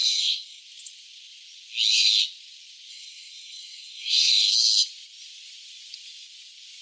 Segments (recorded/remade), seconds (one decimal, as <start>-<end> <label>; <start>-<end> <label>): 0.0-0.6 remade; 0.6-2.9 recorded; 2.9-4.3 remade; 4.3-6.8 recorded